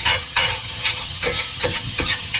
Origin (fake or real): fake